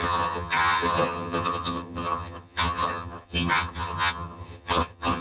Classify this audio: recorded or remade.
remade